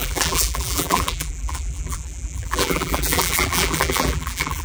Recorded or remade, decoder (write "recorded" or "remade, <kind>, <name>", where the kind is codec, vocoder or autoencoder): remade, vocoder, BigVGAN v2